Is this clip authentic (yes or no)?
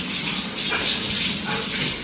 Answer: yes